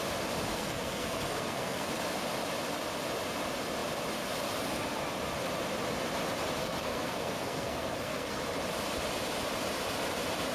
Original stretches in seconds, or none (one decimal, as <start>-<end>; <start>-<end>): 0.0-0.5; 1.9-6.6; 8.4-10.5